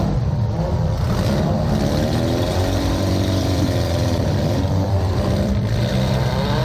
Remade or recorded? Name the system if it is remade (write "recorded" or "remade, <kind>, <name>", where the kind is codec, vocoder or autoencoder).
remade, vocoder, BigVGAN v2